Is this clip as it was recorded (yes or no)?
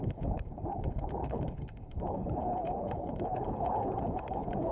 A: no